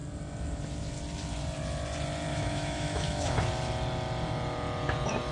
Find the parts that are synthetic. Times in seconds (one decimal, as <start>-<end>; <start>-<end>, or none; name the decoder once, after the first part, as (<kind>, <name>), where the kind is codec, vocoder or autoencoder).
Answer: 2.3-3.5 (autoencoder, DAC-VAE)